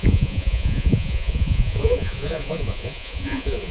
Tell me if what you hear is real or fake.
fake